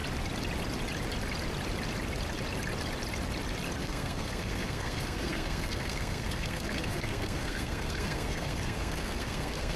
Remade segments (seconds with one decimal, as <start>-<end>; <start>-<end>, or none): 3.8-9.8